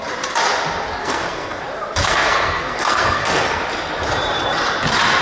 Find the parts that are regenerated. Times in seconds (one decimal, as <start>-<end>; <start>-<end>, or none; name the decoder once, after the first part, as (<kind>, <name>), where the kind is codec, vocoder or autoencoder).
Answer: 1.0-1.6 (codec, SNAC); 2.0-3.6